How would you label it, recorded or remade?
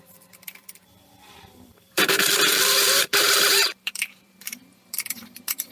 remade